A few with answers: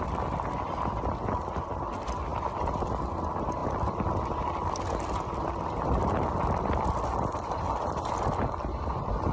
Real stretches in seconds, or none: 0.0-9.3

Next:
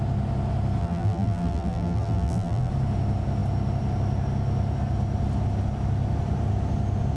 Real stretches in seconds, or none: 0.0-0.8; 2.7-7.2